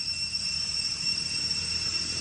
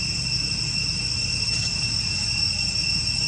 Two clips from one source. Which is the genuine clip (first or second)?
second